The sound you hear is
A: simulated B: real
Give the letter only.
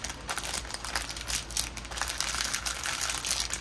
B